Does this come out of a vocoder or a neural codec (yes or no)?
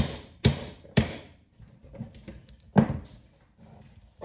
no